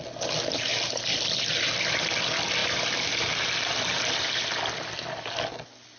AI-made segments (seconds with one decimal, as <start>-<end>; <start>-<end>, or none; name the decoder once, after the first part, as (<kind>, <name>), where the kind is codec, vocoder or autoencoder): 2.6-5.3 (vocoder, BigVGAN v2)

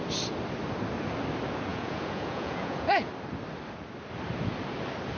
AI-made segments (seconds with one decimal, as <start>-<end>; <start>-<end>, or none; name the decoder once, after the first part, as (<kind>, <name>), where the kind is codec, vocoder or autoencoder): 1.7-3.1 (vocoder, Vocos)

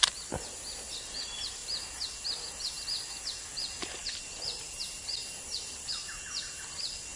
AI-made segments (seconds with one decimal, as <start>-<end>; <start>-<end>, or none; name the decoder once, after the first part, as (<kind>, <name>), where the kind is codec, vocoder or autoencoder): none

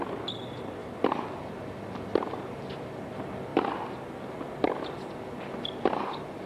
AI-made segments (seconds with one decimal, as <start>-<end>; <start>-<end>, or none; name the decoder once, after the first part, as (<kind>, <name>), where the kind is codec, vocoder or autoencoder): 0.8-1.6 (vocoder, BigVGAN v2); 3.5-4.2

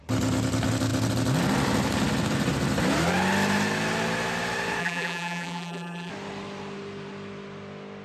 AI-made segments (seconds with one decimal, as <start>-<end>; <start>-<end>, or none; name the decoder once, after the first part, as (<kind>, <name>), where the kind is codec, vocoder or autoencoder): 4.8-6.1 (vocoder, BigVGAN v2)